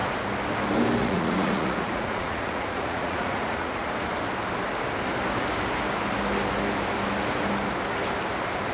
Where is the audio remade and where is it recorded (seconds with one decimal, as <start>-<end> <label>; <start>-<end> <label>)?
0.0-1.0 recorded; 1.0-3.9 remade; 3.9-8.7 recorded